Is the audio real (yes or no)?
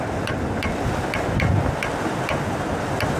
no